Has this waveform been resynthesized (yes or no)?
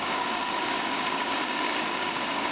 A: yes